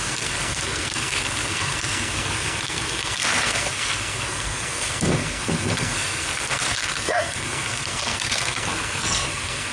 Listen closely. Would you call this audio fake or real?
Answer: fake